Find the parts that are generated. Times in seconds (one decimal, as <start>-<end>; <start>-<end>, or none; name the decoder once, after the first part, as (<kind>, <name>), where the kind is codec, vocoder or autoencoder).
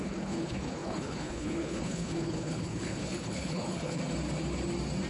0.0-4.0 (codec, HILCodec)